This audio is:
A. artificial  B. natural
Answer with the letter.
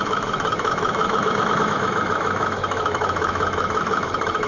A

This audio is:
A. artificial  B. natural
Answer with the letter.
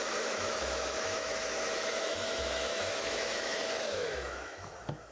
A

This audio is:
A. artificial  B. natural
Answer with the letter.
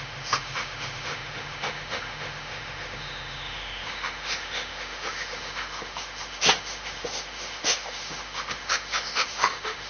A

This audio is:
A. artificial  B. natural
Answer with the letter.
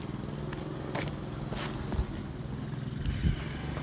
B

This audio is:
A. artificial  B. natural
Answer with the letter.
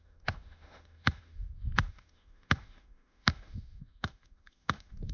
A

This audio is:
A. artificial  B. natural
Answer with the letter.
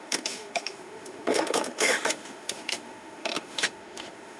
A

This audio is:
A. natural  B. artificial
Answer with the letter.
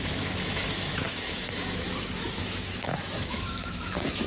B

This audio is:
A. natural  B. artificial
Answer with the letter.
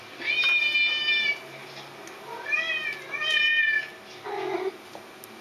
A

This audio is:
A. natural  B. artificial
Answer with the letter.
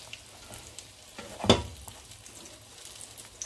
A